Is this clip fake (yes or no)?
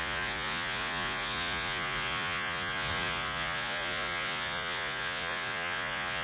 yes